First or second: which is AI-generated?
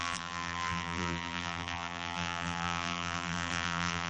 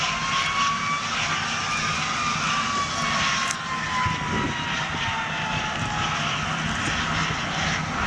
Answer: first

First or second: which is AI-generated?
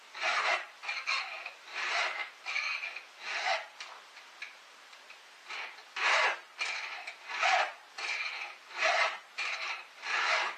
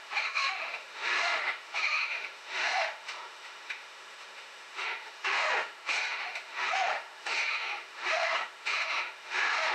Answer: second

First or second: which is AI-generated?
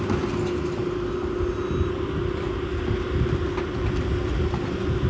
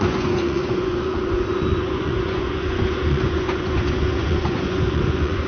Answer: second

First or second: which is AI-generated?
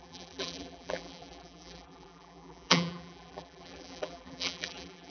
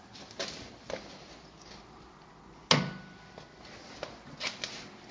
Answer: first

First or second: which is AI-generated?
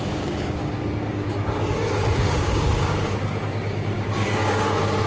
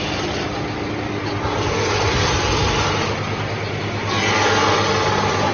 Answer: first